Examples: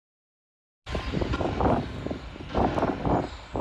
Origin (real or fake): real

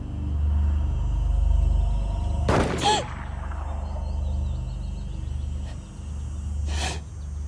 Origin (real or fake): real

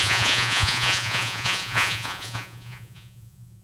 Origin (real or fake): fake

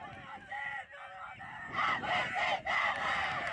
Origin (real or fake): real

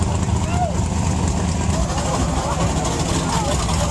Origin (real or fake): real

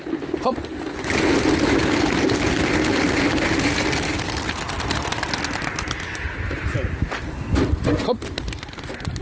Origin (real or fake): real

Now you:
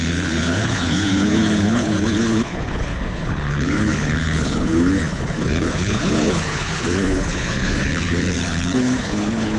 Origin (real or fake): fake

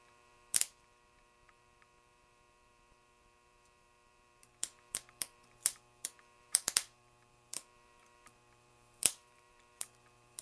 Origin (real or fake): fake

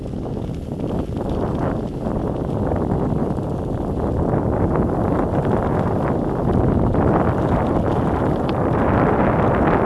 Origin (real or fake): real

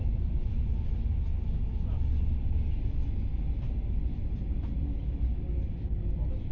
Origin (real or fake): real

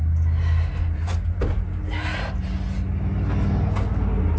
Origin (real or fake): real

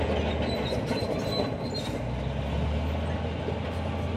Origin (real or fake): real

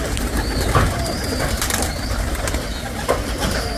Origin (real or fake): real